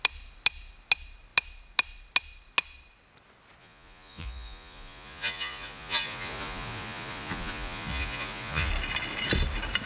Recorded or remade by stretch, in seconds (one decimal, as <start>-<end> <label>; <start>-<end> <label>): 0.0-3.6 recorded; 3.6-8.7 remade; 8.7-9.9 recorded